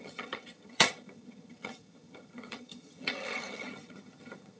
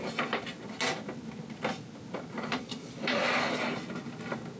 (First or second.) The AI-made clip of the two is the first